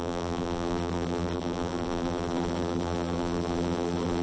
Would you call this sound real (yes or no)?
no